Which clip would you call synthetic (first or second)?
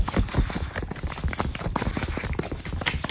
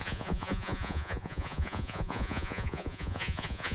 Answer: second